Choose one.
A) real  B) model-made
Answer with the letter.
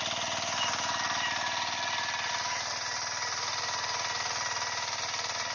A